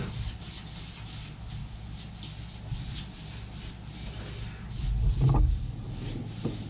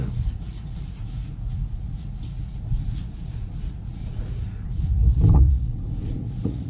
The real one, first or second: first